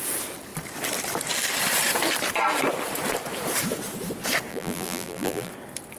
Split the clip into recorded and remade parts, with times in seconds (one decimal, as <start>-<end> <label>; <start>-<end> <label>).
0.0-4.5 recorded; 4.5-5.5 remade; 5.5-6.0 recorded

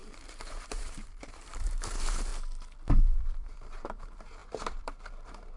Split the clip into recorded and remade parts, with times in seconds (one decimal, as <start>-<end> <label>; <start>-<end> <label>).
0.0-2.3 remade; 2.3-3.0 recorded; 3.0-5.6 remade

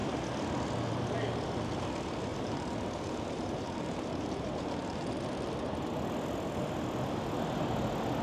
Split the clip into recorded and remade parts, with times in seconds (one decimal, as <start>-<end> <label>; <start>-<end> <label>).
0.0-2.3 recorded; 2.3-5.2 remade; 5.2-8.2 recorded